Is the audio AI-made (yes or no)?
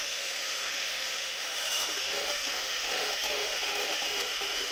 yes